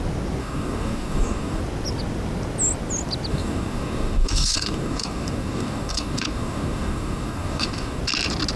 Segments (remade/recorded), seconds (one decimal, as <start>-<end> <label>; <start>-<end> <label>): 0.0-0.4 recorded; 0.4-1.6 remade; 1.6-3.3 recorded; 3.3-8.0 remade; 8.0-8.6 recorded